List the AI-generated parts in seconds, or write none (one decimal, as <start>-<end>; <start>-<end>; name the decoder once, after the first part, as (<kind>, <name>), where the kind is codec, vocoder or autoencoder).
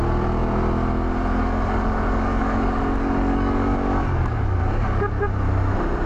1.4-5.1 (codec, DAC)